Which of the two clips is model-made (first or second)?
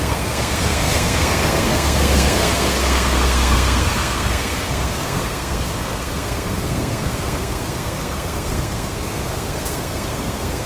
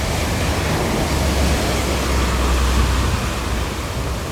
first